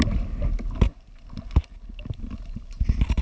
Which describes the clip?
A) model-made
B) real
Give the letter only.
B